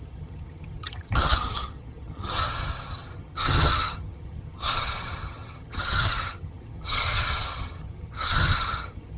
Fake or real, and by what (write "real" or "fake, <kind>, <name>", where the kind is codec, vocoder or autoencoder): fake, vocoder, HiFi-GAN